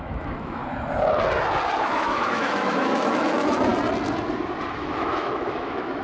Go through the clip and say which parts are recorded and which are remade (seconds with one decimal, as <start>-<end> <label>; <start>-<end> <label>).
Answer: 0.0-0.6 remade; 0.6-1.8 recorded; 1.8-3.7 remade; 3.7-4.7 recorded; 4.7-6.0 remade